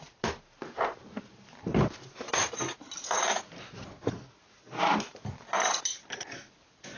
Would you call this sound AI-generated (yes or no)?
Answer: no